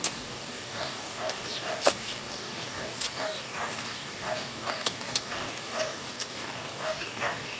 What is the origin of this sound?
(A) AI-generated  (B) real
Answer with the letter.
A